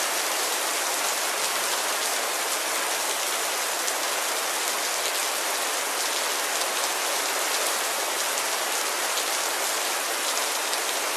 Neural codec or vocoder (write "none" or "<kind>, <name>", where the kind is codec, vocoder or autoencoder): none